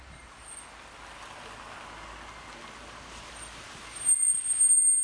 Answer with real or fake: real